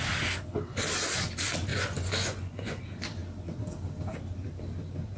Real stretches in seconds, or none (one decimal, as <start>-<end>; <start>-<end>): 0.0-1.7; 2.8-5.2